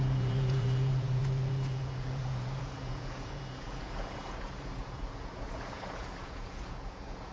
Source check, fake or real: fake